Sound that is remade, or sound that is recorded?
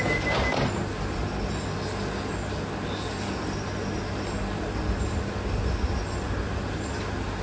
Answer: recorded